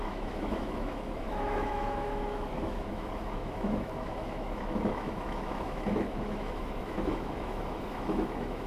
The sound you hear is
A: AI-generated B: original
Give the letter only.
A